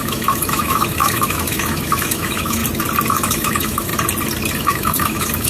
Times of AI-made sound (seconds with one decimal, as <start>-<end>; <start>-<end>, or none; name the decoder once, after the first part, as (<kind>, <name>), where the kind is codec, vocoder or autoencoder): 0.0-2.6 (autoencoder, DAC-VAE); 3.1-3.9; 4.6-5.5